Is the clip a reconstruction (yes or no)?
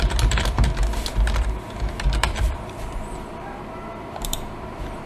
yes